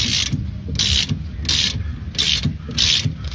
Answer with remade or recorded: recorded